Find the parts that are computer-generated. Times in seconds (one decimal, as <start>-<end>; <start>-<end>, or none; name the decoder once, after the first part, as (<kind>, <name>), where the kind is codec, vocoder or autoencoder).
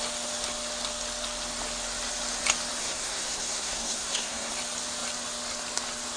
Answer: 2.8-4.5 (codec, SNAC)